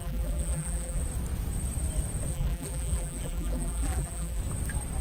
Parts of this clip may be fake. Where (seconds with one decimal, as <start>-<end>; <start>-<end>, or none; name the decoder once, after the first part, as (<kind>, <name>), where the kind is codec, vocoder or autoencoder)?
0.0-1.0 (vocoder, BigVGAN v2); 2.3-4.4